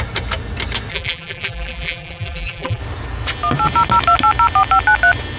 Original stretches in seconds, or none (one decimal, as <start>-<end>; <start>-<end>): 0.0-0.9; 2.8-5.4